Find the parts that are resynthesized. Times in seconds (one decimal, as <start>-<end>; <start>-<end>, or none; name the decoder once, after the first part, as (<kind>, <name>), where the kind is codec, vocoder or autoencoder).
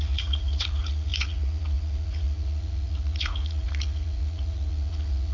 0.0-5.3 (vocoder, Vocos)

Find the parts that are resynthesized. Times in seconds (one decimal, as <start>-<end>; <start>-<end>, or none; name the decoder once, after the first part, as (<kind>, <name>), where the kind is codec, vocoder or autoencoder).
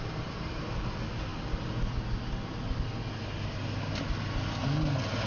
none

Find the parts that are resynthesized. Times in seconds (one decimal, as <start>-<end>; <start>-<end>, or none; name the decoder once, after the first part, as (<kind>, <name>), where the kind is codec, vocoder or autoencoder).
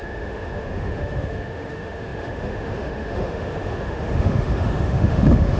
0.0-5.6 (autoencoder, DAC-VAE)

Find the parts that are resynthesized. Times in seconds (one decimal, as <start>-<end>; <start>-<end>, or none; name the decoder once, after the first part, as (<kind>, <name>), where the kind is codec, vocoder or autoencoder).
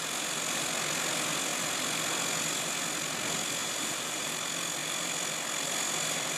3.6-4.3 (vocoder, BigVGAN v2)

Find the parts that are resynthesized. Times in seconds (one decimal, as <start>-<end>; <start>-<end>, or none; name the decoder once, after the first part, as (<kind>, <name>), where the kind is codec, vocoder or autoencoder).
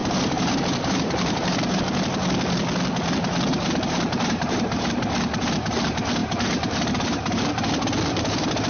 0.0-1.8 (vocoder, BigVGAN v2); 3.5-5.0; 6.2-7.7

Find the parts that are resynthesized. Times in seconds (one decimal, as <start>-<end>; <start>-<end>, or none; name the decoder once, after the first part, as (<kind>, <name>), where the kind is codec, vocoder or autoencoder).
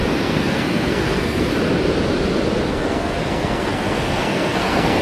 0.0-1.5 (codec, SNAC); 2.7-5.0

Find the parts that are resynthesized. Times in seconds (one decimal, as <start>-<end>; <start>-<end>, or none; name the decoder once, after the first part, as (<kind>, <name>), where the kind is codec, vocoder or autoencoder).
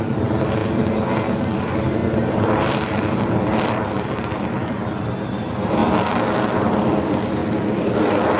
0.0-0.6 (vocoder, BigVGAN v2); 1.6-5.8; 6.7-7.4